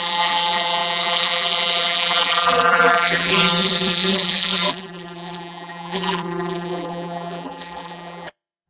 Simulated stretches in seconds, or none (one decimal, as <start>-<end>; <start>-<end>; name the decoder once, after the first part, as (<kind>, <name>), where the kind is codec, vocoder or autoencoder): 0.0-8.7 (vocoder, BigVGAN v2)

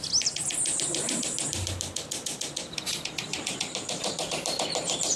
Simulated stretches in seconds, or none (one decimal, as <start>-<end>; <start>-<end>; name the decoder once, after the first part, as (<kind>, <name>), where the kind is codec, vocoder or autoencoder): 3.3-5.2 (vocoder, BigVGAN v2)